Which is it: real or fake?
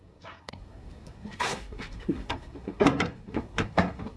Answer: fake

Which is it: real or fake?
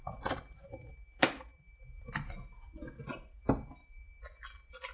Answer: real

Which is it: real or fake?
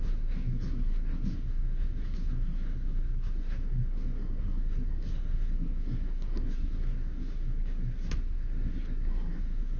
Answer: fake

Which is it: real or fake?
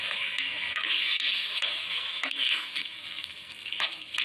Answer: fake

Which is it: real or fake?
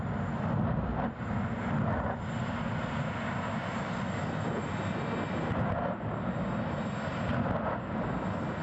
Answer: real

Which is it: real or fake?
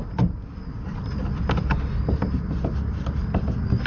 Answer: real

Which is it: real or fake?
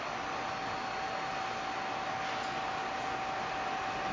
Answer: real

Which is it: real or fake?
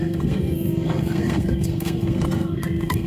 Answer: fake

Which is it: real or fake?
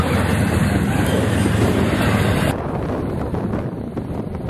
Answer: real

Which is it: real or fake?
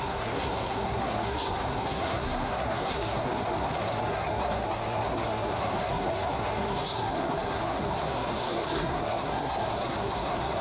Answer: fake